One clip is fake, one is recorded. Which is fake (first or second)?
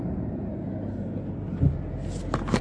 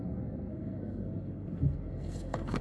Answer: second